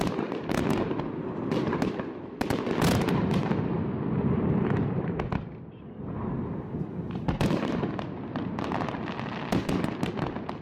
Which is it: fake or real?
real